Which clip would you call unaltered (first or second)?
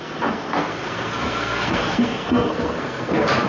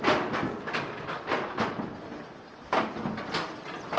second